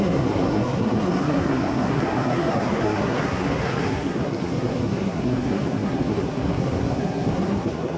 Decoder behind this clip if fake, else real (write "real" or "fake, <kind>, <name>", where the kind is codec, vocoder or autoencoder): fake, codec, SNAC